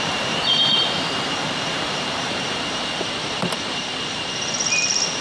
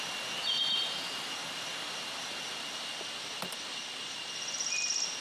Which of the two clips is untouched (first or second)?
second